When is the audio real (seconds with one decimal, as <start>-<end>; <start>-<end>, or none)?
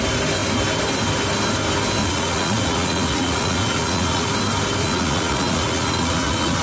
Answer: 0.0-2.0; 4.3-4.8